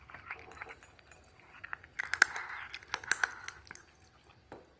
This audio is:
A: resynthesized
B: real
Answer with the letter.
B